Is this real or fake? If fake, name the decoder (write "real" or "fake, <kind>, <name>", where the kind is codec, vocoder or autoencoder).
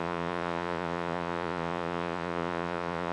fake, vocoder, Vocos